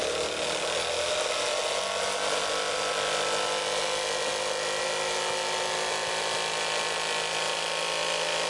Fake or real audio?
real